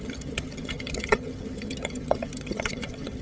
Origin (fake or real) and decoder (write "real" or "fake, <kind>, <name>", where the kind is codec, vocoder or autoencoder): fake, vocoder, HiFi-GAN